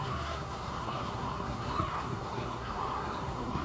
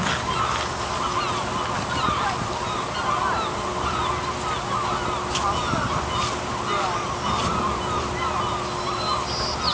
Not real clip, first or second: first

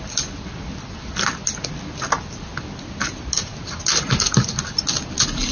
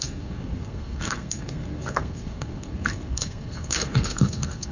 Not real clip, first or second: second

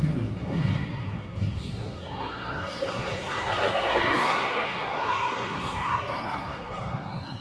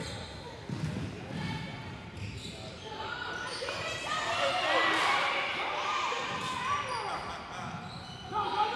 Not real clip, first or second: first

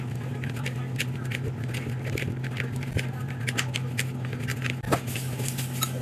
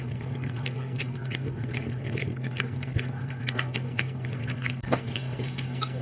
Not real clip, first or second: second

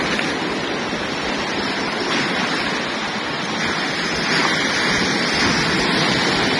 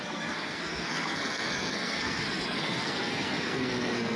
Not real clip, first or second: second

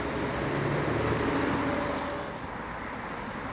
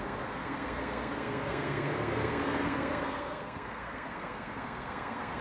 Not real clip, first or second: second